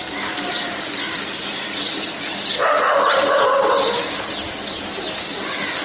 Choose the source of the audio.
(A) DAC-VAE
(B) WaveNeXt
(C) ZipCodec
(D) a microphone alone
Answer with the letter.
D